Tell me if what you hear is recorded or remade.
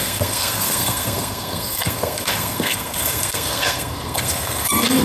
remade